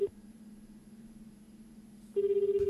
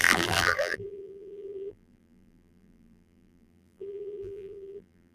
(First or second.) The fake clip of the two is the second